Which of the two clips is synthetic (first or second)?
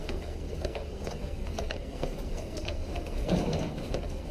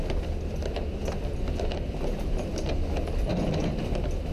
first